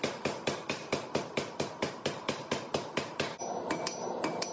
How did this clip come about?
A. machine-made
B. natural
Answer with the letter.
B